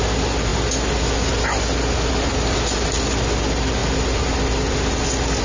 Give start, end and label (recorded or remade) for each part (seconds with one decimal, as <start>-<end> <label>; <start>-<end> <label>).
0.0-5.4 recorded